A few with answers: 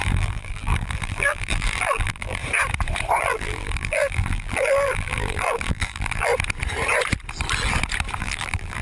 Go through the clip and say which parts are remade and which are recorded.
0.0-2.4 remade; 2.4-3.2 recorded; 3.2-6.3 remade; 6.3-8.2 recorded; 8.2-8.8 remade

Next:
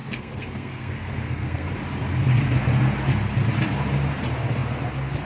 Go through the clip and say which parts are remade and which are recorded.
0.0-1.7 remade; 1.7-5.3 recorded

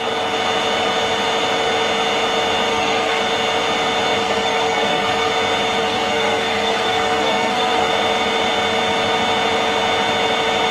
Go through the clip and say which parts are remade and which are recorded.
0.0-2.7 recorded; 2.7-3.2 remade; 3.2-4.2 recorded; 4.2-5.3 remade; 5.3-5.8 recorded; 5.8-7.9 remade; 7.9-10.7 recorded

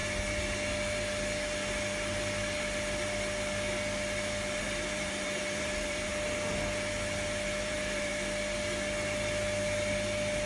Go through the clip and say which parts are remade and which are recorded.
0.0-4.6 recorded; 4.6-6.1 remade; 6.1-7.6 recorded; 7.6-8.1 remade; 8.1-10.5 recorded